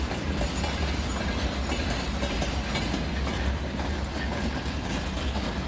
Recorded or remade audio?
recorded